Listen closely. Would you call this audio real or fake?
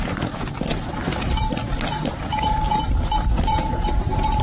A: fake